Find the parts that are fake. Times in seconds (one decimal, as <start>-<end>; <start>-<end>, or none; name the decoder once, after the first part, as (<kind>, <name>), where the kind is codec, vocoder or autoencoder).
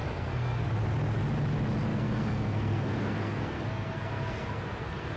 0.0-0.7 (codec, SNAC); 1.9-5.2